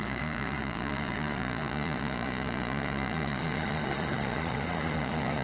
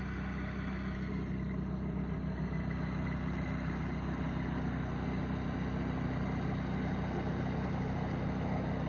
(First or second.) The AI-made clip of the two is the first